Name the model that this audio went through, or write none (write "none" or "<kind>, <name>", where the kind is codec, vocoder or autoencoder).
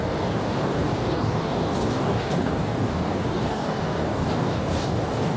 codec, DAC